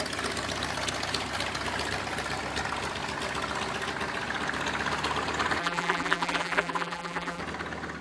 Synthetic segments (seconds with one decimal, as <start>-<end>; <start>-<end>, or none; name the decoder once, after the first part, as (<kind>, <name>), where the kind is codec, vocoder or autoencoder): 5.6-7.4 (vocoder, BigVGAN v2)